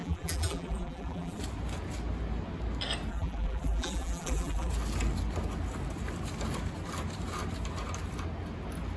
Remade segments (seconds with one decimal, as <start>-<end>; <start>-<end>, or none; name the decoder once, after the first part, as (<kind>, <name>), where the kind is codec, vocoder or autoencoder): 0.0-1.4 (vocoder, BigVGAN v2); 3.1-4.7